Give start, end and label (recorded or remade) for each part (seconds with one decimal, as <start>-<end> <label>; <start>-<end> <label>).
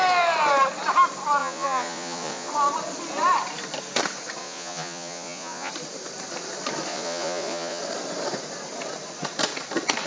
0.0-1.4 recorded; 1.4-2.5 remade; 2.5-4.4 recorded; 4.4-5.7 remade; 5.7-6.9 recorded; 6.9-7.8 remade; 7.8-10.1 recorded